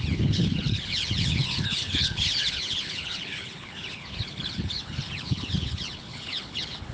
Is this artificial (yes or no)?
yes